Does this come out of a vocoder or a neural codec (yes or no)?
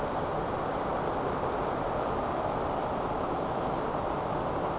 no